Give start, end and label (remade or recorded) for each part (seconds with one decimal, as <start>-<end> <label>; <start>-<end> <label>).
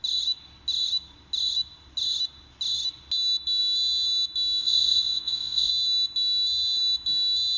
0.0-4.6 recorded; 4.6-5.7 remade; 5.7-7.6 recorded